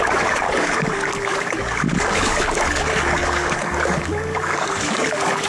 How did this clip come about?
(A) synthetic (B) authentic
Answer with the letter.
A